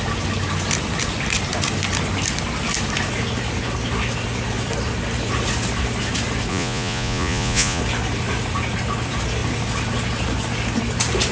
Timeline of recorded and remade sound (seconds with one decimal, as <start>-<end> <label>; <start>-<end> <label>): 0.0-6.5 recorded; 6.5-7.8 remade; 7.8-11.3 recorded